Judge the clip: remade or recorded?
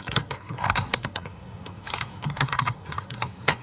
remade